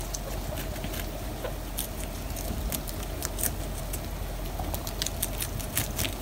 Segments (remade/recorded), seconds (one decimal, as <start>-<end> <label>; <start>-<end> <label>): 0.0-6.2 recorded